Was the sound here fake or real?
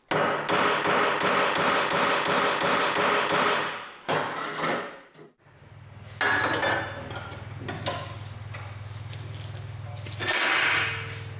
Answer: real